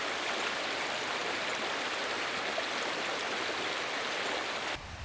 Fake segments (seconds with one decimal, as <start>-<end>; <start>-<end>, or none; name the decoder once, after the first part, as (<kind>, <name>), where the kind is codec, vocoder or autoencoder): none